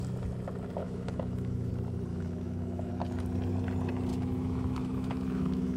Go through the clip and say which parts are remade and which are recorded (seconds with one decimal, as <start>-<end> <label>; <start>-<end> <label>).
0.0-0.8 recorded; 0.8-1.7 remade; 1.7-2.1 recorded; 2.1-2.9 remade; 2.9-4.1 recorded; 4.1-5.8 remade